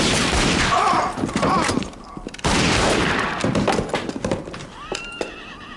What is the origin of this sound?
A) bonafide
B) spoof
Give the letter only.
B